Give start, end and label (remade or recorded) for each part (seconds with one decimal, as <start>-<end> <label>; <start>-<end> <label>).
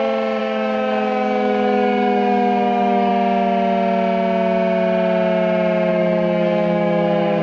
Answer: 0.0-0.4 recorded; 0.4-3.1 remade; 3.1-5.9 recorded; 5.9-7.4 remade